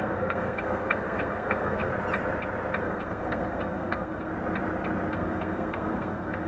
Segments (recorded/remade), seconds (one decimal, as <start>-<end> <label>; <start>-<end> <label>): 0.0-1.9 remade; 1.9-2.8 recorded; 2.8-4.3 remade; 4.3-5.1 recorded; 5.1-6.5 remade